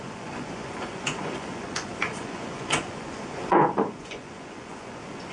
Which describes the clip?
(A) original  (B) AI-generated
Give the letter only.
B